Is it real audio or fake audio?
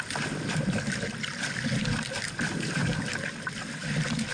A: fake